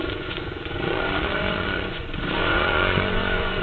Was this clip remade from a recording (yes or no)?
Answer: yes